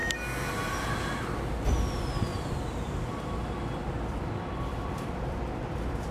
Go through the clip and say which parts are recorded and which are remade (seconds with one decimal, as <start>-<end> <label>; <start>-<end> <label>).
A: 0.0-2.3 recorded; 2.3-6.1 remade